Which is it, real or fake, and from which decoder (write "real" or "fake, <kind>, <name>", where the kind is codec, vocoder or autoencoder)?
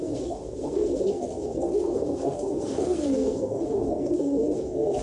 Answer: fake, codec, SNAC